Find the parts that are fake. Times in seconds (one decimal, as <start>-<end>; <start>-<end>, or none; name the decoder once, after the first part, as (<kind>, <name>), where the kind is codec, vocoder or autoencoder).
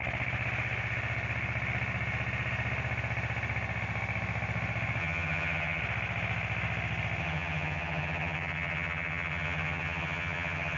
5.0-5.8 (vocoder, HiFi-GAN); 7.2-10.8